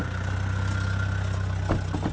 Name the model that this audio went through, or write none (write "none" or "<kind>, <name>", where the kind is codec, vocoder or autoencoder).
none